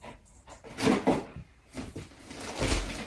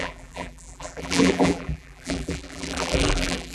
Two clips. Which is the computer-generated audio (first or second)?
second